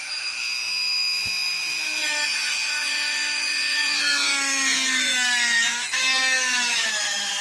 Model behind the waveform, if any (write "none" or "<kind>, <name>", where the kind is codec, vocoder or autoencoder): autoencoder, DAC-VAE